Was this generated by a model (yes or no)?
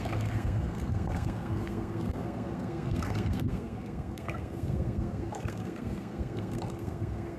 yes